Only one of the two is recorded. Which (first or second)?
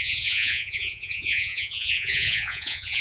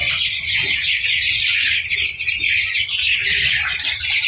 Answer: second